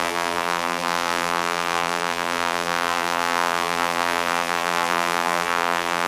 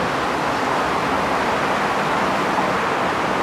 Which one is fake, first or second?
first